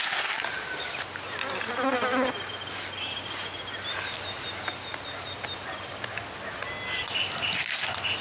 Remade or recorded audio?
recorded